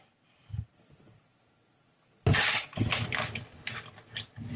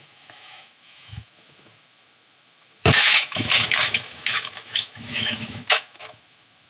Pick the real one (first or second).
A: first